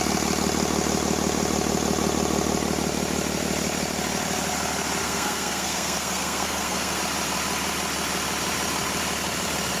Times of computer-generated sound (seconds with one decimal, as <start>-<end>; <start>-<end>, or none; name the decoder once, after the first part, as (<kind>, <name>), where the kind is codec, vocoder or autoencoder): 5.0-7.0 (codec, SNAC)